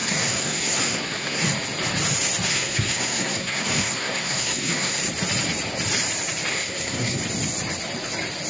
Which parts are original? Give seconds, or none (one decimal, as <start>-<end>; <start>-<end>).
1.4-2.5; 5.0-6.5; 7.2-8.5